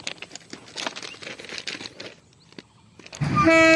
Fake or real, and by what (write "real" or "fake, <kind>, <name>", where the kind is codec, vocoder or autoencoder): real